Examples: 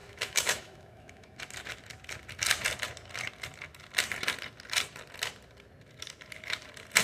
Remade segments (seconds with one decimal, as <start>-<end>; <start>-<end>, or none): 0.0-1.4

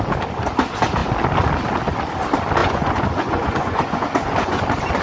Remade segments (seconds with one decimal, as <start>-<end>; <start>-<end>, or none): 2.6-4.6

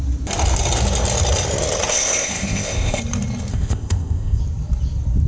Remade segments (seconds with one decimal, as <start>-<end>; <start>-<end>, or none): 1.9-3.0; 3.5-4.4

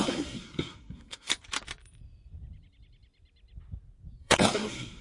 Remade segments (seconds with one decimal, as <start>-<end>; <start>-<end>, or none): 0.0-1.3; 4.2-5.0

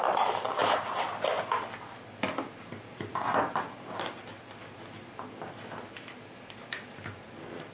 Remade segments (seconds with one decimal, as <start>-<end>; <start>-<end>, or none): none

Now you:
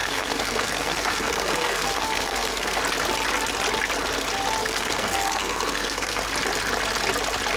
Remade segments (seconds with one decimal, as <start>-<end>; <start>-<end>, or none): 0.0-2.8; 4.6-6.2

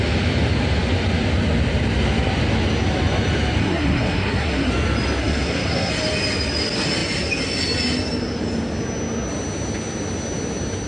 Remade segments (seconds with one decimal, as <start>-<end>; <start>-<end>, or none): 3.6-4.7; 5.2-5.9

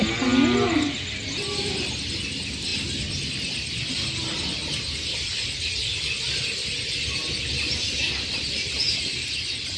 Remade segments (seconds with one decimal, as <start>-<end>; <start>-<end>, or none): none